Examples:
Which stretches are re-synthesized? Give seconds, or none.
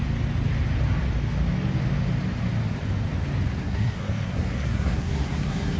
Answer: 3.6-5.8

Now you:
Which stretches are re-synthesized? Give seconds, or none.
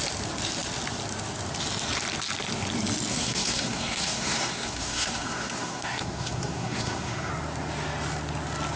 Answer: 3.1-7.3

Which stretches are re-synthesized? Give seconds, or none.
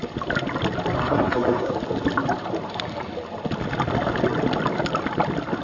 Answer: 1.0-1.7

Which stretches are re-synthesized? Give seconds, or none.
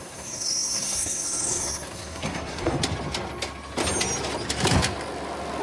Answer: 0.0-2.8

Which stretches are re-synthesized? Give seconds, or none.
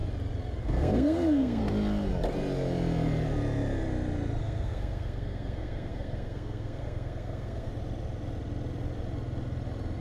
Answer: 0.6-1.6; 4.4-7.7